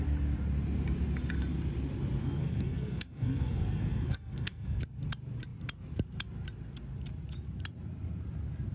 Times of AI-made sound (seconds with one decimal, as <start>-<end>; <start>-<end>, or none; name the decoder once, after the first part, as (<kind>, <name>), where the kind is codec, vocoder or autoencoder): 2.2-4.8 (codec, SNAC)